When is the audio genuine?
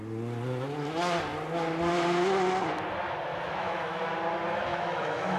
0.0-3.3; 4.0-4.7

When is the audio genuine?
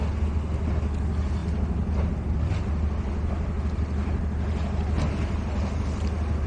0.0-6.5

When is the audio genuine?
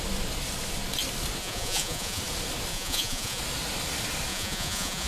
0.0-1.4; 2.2-2.7; 3.4-4.3